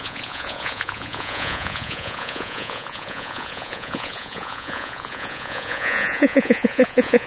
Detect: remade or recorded remade